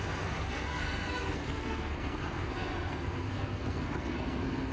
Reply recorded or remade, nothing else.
remade